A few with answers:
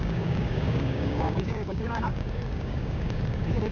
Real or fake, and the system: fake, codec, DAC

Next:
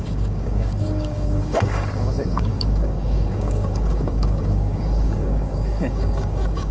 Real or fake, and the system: fake, codec, DAC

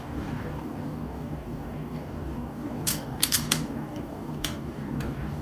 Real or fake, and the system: fake, codec, DAC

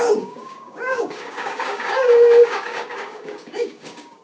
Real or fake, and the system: fake, codec, DAC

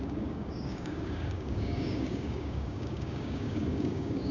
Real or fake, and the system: fake, codec, DAC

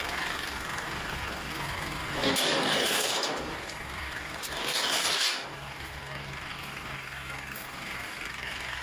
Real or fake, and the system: fake, codec, DAC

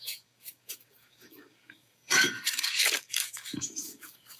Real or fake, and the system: fake, codec, DAC